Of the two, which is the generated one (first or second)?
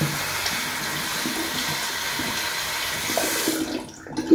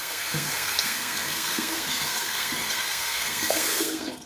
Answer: second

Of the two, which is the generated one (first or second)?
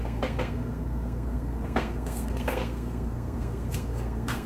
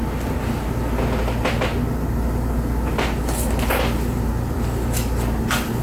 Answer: first